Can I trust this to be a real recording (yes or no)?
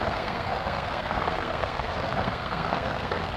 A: no